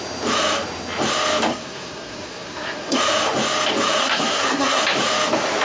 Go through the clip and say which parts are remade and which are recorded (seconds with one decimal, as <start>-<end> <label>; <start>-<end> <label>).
0.0-1.5 recorded; 1.5-3.0 remade; 3.0-4.0 recorded; 4.0-4.8 remade; 4.8-5.6 recorded